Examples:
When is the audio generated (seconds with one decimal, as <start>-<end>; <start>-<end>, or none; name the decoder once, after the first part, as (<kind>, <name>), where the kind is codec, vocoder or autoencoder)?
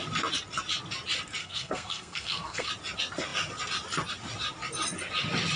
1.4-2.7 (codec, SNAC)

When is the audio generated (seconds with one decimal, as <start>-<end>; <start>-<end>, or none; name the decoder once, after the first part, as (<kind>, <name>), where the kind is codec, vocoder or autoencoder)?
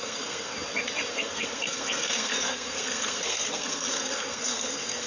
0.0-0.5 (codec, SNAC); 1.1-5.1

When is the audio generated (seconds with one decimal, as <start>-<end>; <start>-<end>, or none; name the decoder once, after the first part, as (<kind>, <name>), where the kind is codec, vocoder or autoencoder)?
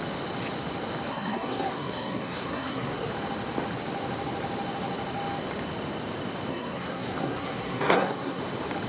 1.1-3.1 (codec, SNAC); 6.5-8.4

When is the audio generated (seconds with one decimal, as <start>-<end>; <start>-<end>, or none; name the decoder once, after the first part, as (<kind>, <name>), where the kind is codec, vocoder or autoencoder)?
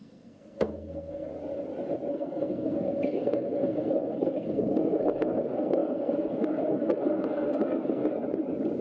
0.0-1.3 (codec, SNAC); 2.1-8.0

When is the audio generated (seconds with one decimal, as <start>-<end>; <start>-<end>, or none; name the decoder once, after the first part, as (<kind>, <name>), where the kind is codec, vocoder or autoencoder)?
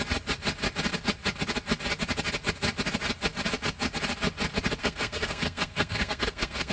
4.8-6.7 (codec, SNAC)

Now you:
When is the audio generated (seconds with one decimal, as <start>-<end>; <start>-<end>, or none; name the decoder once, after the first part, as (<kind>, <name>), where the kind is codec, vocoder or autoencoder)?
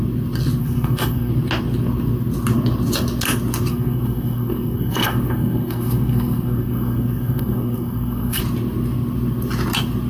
0.6-1.3 (codec, SNAC); 3.7-8.4